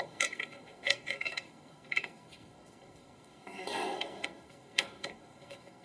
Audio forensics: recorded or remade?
remade